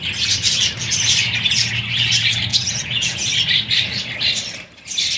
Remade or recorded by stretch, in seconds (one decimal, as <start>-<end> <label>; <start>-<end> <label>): 0.0-2.5 recorded; 2.5-3.3 remade; 3.3-5.2 recorded